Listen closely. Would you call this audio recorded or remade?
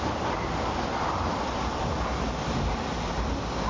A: recorded